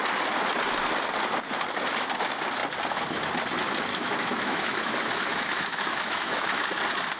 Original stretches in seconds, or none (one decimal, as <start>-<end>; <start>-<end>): 0.0-3.9; 6.8-7.2